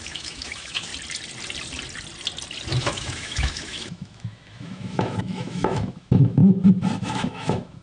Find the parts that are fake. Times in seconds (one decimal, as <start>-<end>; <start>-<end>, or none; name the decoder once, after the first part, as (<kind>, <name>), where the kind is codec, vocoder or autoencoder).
0.0-0.9 (autoencoder, DAC-VAE); 2.8-6.4; 7.0-7.8